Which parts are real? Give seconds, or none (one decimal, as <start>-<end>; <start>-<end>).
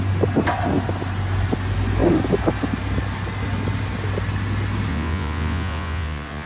0.0-4.9